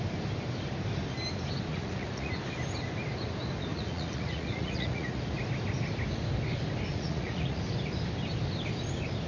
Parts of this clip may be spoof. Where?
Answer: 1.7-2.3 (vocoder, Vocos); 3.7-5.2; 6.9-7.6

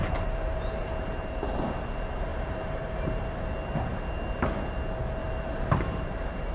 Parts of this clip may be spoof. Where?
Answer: 0.0-0.9 (vocoder, BigVGAN v2); 2.3-3.3; 5.2-6.5

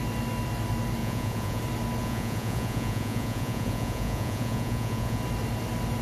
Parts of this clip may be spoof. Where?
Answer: 1.0-1.6 (vocoder, Vocos); 2.0-5.2

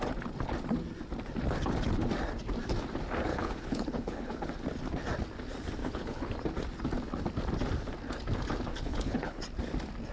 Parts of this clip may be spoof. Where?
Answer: 3.3-4.5 (codec, HILCodec); 5.8-6.3; 8.7-9.4

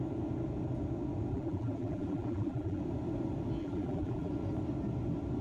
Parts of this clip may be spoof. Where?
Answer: 1.3-2.8 (vocoder, BigVGAN v2); 3.6-4.3

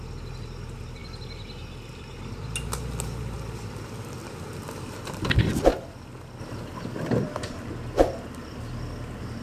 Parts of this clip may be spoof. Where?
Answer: none

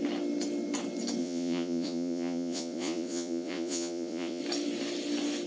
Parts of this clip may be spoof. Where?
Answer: 1.2-4.4 (vocoder, Vocos)

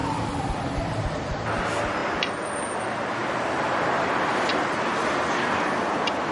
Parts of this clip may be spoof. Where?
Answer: 4.5-5.1 (vocoder, BigVGAN v2)